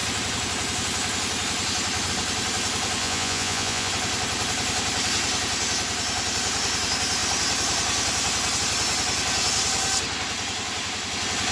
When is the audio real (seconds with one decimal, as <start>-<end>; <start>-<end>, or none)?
0.0-3.0; 3.9-11.5